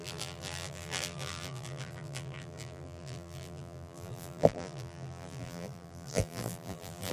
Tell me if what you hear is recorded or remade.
remade